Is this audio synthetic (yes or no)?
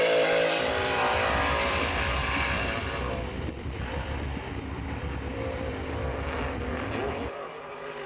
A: no